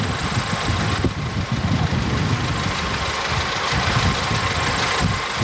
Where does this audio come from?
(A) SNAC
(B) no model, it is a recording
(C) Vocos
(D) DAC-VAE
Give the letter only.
B